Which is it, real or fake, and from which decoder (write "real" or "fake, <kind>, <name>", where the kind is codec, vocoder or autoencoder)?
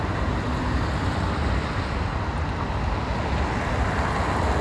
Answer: real